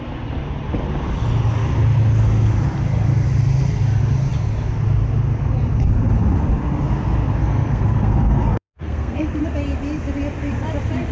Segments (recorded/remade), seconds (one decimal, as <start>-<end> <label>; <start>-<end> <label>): 0.0-7.4 recorded; 7.4-9.4 remade; 9.4-11.1 recorded